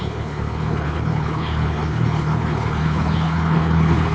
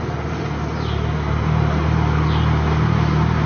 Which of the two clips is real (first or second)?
second